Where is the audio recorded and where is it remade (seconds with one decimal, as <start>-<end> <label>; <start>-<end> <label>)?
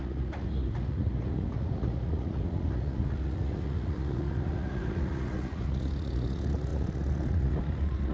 0.0-8.1 remade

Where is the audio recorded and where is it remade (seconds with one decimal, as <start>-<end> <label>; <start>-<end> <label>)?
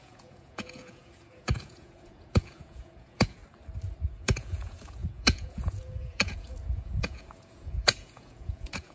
0.0-3.4 remade; 3.4-4.1 recorded; 4.1-8.9 remade